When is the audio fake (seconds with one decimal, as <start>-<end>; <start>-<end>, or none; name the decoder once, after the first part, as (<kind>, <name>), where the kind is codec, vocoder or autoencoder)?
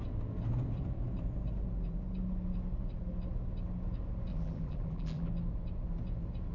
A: 4.3-5.3 (vocoder, BigVGAN v2)